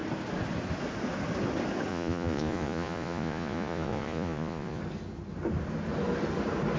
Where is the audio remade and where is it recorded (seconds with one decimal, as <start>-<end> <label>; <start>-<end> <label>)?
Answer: 0.0-1.9 recorded; 1.9-4.8 remade; 4.8-6.8 recorded